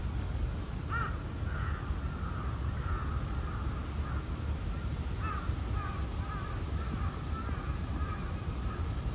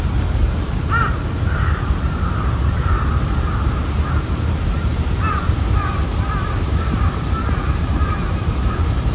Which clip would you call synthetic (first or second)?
second